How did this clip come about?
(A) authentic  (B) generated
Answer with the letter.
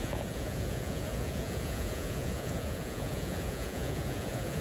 B